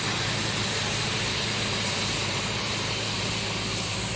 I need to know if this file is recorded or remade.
remade